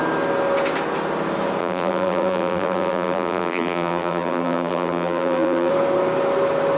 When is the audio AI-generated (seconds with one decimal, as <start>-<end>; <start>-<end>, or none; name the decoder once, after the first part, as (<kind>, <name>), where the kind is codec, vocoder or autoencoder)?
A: 1.6-5.7 (vocoder, BigVGAN v2)